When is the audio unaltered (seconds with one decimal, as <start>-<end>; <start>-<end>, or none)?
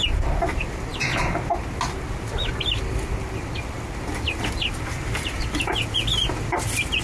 0.0-7.0